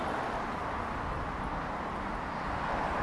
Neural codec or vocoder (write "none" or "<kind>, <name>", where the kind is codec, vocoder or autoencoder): none